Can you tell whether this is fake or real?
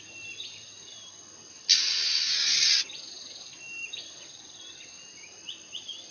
real